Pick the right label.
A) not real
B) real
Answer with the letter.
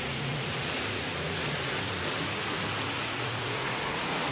A